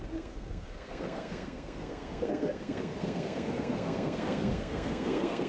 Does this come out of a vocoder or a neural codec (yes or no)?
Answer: yes